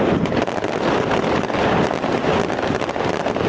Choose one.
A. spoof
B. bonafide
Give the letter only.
B